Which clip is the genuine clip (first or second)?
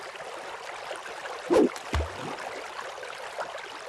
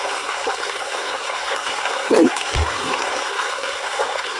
first